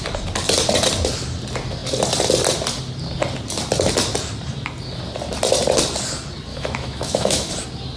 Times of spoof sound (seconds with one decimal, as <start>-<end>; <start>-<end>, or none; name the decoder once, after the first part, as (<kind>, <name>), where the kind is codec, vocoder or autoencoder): 6.5-7.5 (autoencoder, DAC-VAE)